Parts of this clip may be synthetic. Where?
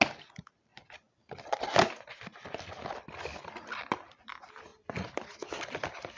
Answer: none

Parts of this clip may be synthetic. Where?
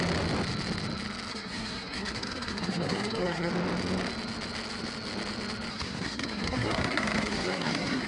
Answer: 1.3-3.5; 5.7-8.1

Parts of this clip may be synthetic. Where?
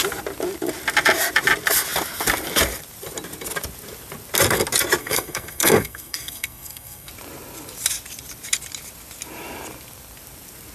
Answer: 5.0-7.1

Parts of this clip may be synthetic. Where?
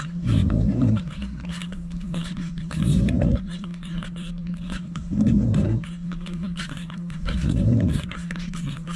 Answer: 0.0-9.0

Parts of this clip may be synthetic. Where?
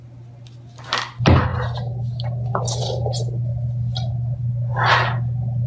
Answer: none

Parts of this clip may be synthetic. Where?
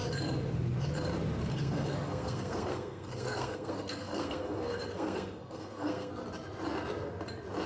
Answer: 1.5-6.1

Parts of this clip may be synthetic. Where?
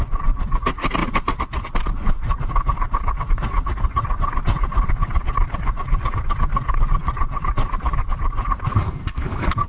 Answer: 8.7-9.7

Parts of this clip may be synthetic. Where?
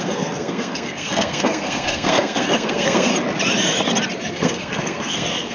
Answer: 0.0-3.1; 4.3-5.5